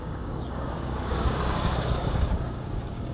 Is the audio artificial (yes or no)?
yes